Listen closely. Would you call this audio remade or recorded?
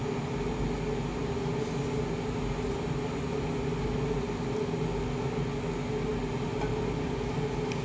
recorded